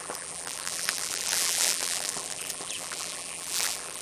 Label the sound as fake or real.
fake